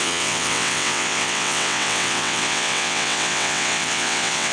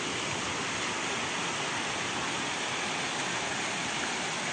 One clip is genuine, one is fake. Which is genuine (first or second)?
second